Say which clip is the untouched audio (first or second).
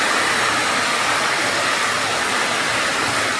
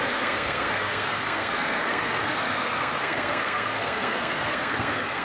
first